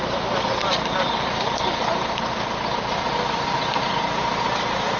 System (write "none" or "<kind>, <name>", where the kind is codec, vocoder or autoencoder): none